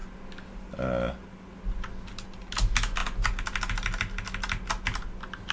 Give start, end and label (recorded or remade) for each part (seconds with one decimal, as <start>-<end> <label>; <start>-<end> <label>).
0.0-5.5 recorded